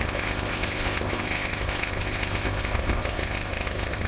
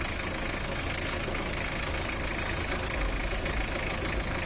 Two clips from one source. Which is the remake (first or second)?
first